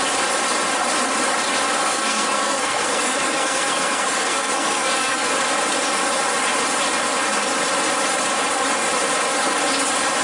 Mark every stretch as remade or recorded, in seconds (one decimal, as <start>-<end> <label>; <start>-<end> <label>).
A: 0.0-1.8 recorded; 1.8-5.3 remade; 5.3-10.2 recorded